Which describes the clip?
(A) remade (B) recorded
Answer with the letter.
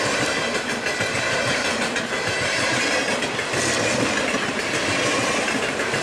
B